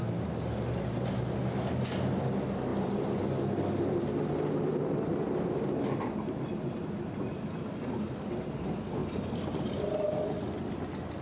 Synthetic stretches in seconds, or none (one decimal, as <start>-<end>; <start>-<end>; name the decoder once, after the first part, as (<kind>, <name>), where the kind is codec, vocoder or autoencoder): 2.7-3.4 (vocoder, BigVGAN v2); 5.1-6.8; 9.0-9.8